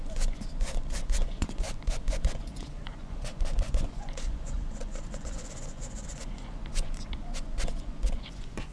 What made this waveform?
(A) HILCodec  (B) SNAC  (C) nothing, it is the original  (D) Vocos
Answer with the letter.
D